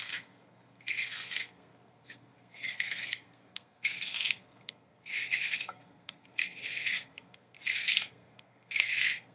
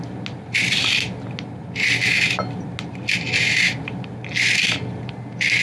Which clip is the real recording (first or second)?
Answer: second